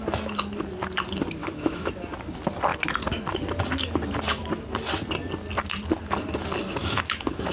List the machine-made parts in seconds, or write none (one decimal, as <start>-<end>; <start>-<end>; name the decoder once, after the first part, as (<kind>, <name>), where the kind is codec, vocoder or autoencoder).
1.4-1.9 (autoencoder, DAC-VAE); 6.8-7.5

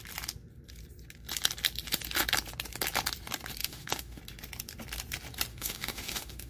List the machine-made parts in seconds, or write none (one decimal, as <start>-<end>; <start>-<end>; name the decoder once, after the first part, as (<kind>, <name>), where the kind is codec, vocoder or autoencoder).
3.6-4.2 (autoencoder, DAC-VAE); 5.5-6.5

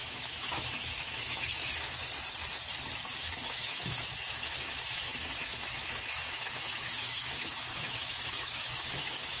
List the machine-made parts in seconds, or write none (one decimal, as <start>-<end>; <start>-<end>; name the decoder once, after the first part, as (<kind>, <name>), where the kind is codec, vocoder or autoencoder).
0.0-2.0 (autoencoder, DAC-VAE); 3.2-9.4

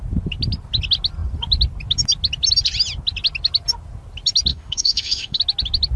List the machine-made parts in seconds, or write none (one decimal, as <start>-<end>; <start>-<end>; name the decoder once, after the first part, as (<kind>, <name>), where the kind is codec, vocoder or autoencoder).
4.5-5.4 (autoencoder, DAC-VAE)

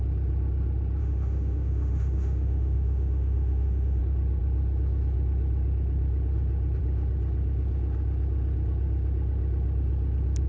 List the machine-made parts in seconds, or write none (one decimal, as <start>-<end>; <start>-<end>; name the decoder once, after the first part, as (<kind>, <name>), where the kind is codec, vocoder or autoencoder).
1.0-4.0 (autoencoder, DAC-VAE)

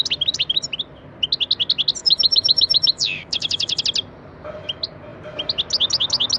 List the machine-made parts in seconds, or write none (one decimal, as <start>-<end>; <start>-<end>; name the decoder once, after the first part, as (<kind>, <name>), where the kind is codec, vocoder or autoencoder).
2.0-3.8 (autoencoder, DAC-VAE)

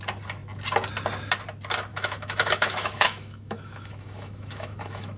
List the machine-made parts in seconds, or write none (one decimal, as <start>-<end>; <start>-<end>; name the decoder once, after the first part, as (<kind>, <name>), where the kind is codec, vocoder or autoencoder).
1.9-5.2 (autoencoder, DAC-VAE)

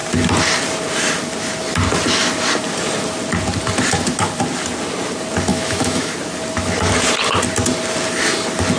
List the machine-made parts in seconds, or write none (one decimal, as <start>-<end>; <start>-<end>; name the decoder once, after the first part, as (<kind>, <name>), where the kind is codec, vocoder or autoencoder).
5.5-6.1 (autoencoder, DAC-VAE)